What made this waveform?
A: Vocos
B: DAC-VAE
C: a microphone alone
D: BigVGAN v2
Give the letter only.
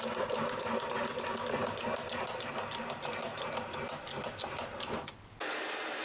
C